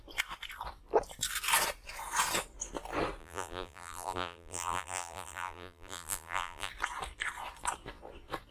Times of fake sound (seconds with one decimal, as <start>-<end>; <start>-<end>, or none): 3.2-6.7